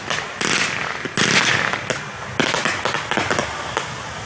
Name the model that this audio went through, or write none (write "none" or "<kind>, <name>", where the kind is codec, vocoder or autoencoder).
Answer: none